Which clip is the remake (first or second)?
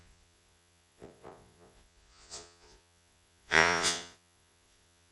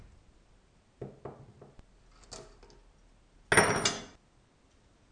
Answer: first